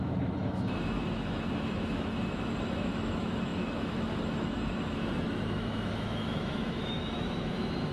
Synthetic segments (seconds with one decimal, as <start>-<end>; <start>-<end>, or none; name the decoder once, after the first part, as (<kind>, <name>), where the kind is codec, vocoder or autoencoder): 0.0-7.9 (autoencoder, DAC-VAE)